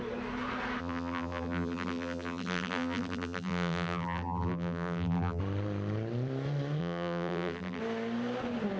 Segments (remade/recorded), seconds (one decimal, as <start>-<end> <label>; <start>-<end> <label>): 0.0-0.8 recorded; 0.8-5.4 remade; 5.4-6.8 recorded; 6.8-7.8 remade; 7.8-8.8 recorded